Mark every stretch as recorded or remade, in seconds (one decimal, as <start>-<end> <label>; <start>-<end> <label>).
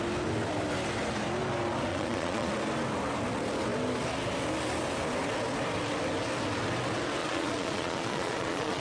0.0-1.9 recorded; 1.9-2.5 remade; 2.5-7.2 recorded; 7.2-8.8 remade